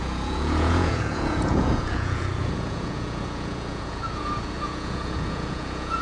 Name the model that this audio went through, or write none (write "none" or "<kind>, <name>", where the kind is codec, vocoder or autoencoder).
vocoder, Vocos